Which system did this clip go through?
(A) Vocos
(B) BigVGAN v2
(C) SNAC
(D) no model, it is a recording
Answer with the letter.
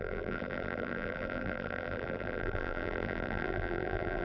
B